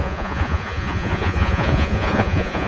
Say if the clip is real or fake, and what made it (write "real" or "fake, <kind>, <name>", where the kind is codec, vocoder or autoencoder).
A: fake, vocoder, Vocos